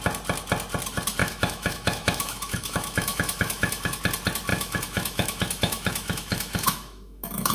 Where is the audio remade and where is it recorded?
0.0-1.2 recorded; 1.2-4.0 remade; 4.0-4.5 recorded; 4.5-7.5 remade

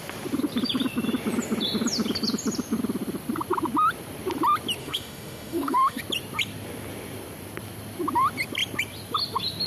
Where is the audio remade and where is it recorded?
0.0-4.8 recorded; 4.8-6.0 remade; 6.0-9.7 recorded

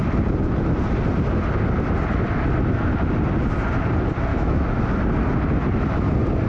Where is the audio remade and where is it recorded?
0.0-4.3 recorded; 4.3-4.8 remade; 4.8-6.5 recorded

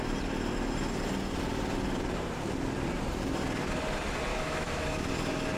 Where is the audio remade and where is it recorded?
0.0-4.3 recorded; 4.3-5.1 remade; 5.1-5.6 recorded

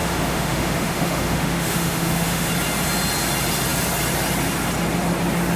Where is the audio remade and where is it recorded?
0.0-2.5 remade; 2.5-5.6 recorded

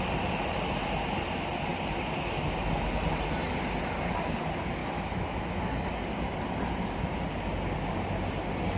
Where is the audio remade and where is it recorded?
0.0-4.8 recorded; 4.8-5.9 remade; 5.9-8.8 recorded

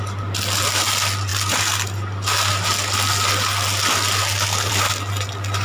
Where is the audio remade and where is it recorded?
0.0-5.6 recorded